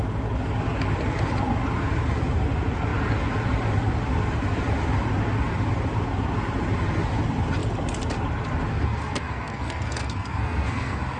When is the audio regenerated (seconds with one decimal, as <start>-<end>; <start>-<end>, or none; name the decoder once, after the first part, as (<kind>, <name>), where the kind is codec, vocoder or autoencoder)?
8.7-11.2 (codec, SNAC)